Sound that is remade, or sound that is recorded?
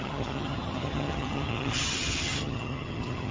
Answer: remade